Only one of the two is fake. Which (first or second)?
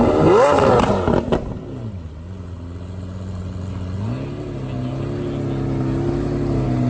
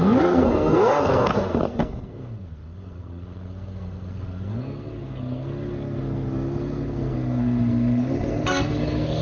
second